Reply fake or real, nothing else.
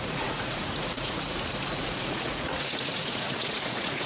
fake